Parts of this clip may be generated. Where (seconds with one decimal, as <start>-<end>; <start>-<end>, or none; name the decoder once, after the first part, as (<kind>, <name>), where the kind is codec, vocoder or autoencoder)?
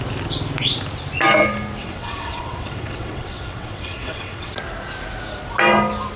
1.8-4.5 (vocoder, WaveNeXt)